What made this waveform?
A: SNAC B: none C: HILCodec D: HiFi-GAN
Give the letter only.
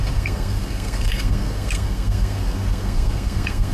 A